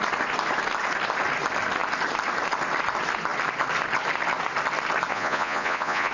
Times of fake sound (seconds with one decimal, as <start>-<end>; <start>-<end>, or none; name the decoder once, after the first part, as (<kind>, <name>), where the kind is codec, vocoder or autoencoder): 5.1-6.1 (vocoder, Vocos)